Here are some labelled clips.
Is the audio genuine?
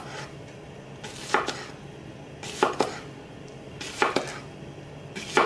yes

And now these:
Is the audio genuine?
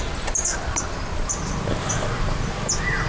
yes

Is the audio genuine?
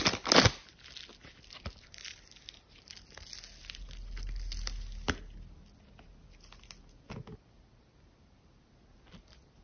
yes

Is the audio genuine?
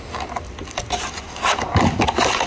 yes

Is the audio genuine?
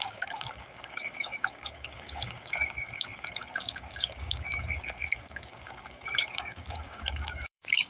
no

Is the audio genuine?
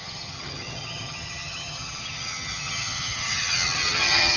no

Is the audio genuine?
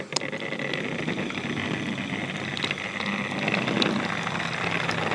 yes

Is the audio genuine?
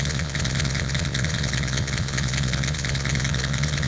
no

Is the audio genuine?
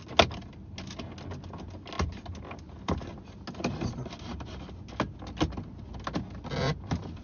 yes